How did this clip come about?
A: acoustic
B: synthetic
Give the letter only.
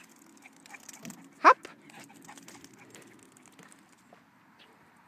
A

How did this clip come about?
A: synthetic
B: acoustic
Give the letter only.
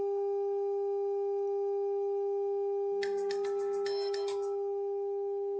B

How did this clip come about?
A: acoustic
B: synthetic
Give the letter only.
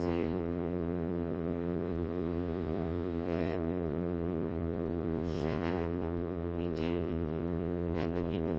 B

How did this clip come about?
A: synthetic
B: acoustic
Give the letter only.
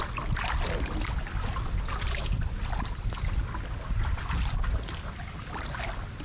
B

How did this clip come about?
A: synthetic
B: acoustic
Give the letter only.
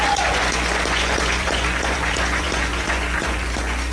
A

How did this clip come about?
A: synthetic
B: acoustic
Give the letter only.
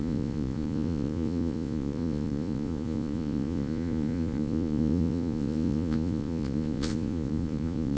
A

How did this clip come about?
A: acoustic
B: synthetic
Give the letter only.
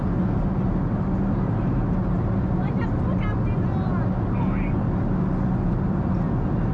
A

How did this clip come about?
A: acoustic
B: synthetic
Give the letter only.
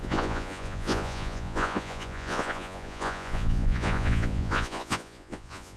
B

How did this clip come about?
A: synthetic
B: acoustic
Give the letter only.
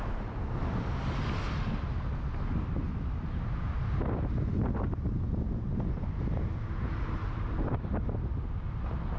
B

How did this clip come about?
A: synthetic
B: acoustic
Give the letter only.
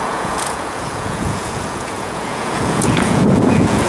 A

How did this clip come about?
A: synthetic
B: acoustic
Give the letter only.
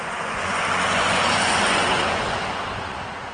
A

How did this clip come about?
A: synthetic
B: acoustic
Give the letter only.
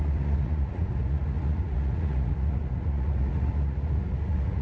A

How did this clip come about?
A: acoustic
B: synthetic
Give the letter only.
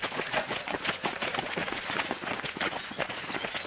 B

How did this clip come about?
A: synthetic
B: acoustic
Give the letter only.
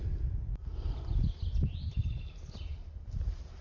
B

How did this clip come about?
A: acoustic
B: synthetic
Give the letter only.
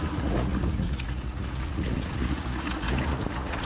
B